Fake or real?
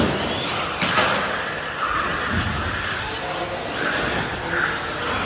real